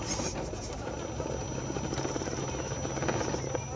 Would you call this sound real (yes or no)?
yes